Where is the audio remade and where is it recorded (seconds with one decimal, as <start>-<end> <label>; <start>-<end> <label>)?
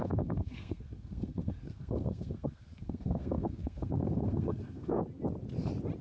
0.0-5.0 remade; 5.0-6.0 recorded